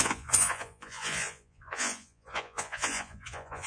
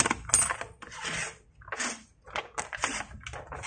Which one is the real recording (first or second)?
second